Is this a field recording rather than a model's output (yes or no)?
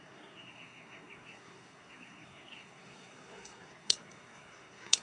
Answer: no